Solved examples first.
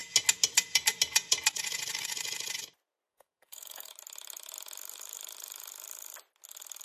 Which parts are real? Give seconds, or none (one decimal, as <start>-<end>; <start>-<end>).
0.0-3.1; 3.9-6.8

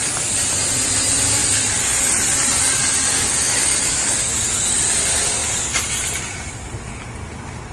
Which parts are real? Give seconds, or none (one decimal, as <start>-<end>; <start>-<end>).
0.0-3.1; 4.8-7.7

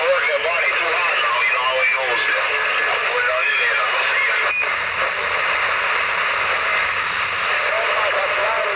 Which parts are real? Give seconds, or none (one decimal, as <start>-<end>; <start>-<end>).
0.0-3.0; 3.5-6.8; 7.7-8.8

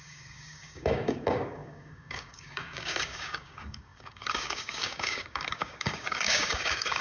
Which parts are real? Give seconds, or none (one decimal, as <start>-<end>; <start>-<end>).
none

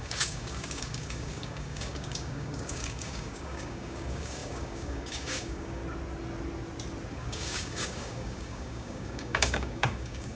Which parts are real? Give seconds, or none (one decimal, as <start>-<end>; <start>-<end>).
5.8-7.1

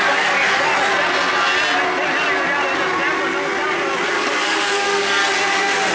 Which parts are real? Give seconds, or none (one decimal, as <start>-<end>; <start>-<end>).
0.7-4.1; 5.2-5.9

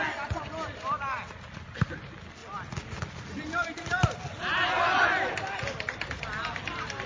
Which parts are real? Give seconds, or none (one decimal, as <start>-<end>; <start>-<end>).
0.0-7.1

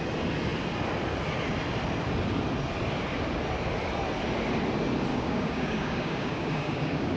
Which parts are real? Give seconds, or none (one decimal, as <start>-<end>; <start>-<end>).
0.0-5.1